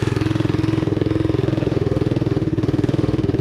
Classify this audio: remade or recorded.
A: remade